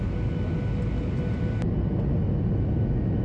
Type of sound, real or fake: real